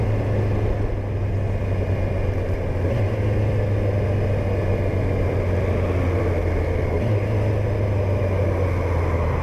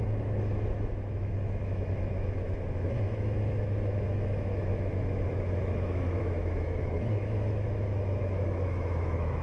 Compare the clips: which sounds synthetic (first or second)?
second